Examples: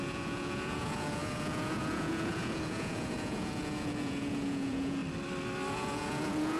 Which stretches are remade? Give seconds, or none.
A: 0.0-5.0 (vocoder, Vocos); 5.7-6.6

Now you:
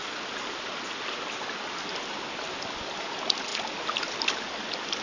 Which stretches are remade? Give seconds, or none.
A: none

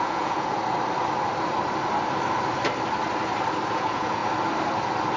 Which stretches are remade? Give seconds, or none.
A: 0.0-0.6 (vocoder, Vocos); 3.7-4.2

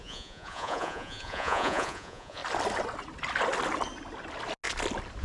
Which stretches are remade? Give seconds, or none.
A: 0.0-2.4 (vocoder, Vocos)

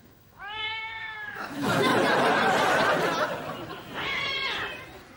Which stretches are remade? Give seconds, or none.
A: 0.0-1.9 (autoencoder, DAC-VAE)

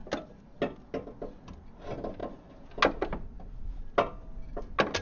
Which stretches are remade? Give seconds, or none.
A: none

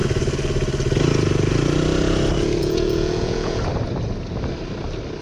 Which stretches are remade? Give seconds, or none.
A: 2.6-3.6 (vocoder, Vocos)